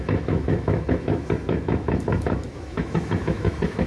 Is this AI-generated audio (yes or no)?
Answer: yes